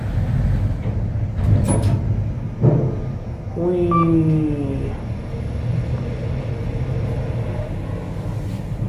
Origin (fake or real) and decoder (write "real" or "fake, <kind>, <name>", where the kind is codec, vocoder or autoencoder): real